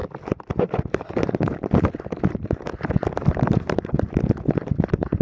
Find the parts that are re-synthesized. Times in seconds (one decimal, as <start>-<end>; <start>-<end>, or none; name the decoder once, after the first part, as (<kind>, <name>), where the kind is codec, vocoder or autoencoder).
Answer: 0.0-1.8 (vocoder, BigVGAN v2); 3.2-4.4